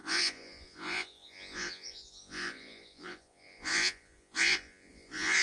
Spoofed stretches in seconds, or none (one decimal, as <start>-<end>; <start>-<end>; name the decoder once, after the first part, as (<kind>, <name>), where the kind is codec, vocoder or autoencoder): 0.0-5.4 (vocoder, Vocos)